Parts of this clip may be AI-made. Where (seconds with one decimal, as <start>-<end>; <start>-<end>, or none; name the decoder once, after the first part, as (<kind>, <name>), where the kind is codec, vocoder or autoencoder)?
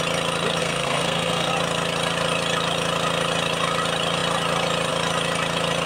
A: 0.6-1.5 (codec, SNAC)